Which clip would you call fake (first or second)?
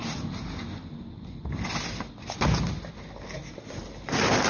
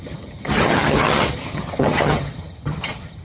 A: second